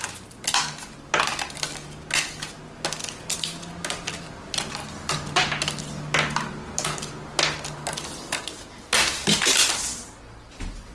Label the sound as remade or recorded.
recorded